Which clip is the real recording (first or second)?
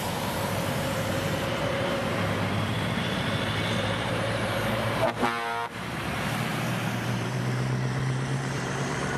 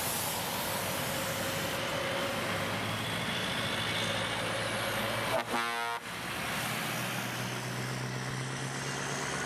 second